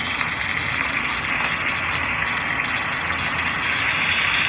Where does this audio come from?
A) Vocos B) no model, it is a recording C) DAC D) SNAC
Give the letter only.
B